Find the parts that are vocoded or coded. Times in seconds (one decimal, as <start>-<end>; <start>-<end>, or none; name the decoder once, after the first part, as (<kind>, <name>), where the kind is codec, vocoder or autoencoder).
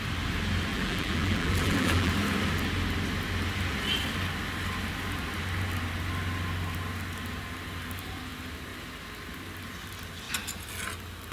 0.7-2.1 (vocoder, BigVGAN v2)